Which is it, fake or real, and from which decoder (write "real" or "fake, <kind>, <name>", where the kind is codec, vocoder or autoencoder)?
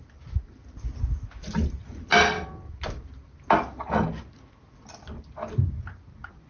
real